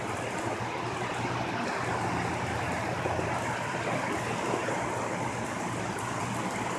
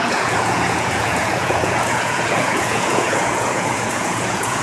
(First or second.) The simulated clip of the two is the second